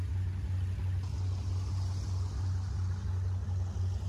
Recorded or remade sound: recorded